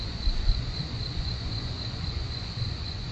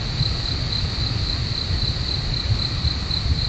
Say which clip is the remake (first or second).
first